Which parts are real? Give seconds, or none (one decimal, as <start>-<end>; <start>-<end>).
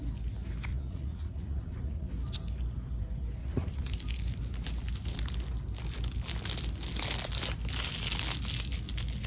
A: 0.0-0.7; 2.1-3.4; 3.9-9.3